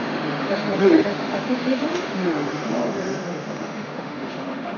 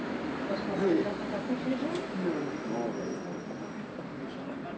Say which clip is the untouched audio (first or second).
second